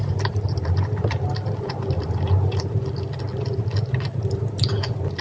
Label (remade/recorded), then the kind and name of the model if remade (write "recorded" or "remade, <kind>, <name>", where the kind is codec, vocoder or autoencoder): recorded